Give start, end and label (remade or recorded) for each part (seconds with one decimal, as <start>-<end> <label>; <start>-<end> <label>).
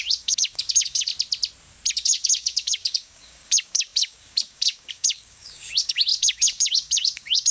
0.0-1.1 remade; 1.1-1.9 recorded; 1.9-7.5 remade